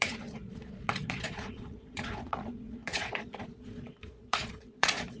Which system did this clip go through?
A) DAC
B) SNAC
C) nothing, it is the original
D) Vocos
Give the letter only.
D